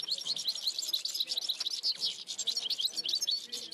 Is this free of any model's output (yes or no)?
yes